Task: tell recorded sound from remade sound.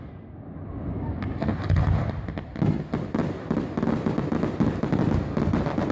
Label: recorded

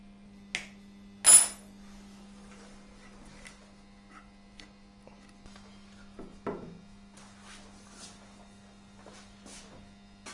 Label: recorded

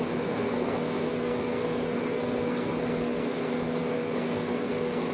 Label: remade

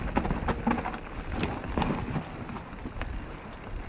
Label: recorded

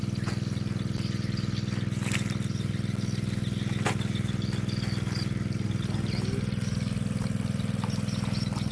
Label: recorded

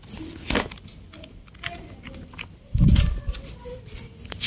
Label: recorded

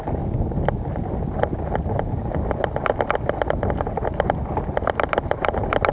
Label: recorded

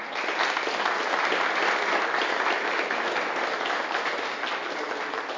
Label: recorded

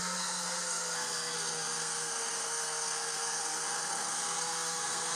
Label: remade